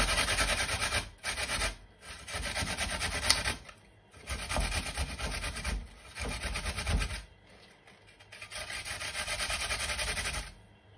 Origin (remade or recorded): recorded